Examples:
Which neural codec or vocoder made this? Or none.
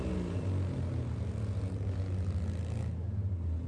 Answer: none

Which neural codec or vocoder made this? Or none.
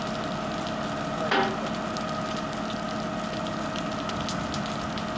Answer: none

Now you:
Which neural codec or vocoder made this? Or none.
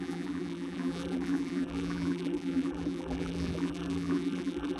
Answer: vocoder, BigVGAN v2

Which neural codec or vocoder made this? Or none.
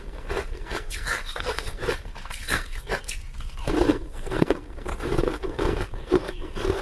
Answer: codec, SNAC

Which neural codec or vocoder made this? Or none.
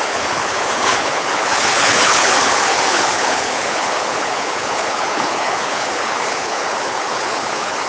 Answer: codec, HILCodec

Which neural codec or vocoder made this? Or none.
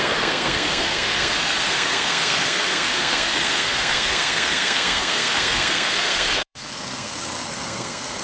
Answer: codec, SNAC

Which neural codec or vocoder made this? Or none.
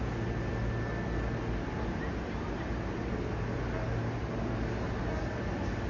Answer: none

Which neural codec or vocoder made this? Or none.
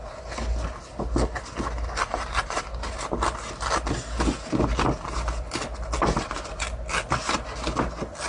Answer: none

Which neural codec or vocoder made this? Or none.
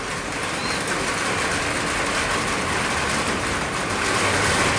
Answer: none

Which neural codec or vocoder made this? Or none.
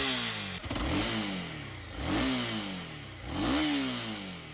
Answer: none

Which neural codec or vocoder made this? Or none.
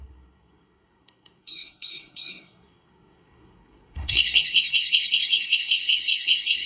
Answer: codec, SNAC